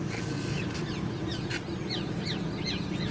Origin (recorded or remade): recorded